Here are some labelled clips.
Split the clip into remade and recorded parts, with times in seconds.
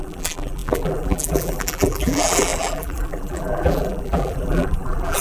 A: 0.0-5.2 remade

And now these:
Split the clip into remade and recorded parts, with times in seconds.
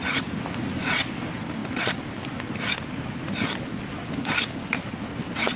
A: 0.0-1.6 recorded; 1.6-2.6 remade; 2.6-5.6 recorded